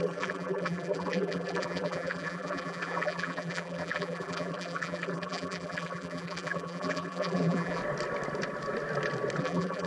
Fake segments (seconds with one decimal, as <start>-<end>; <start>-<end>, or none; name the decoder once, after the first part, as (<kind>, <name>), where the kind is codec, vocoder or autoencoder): 0.0-7.8 (vocoder, BigVGAN v2); 9.4-9.9